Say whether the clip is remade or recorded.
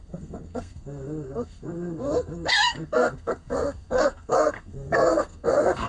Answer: remade